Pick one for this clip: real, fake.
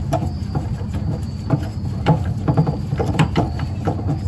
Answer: fake